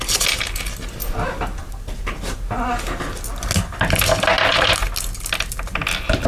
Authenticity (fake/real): real